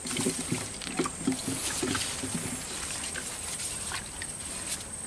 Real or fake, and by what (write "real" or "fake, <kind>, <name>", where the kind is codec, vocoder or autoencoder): real